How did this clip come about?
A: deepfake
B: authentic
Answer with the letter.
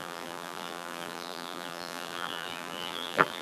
A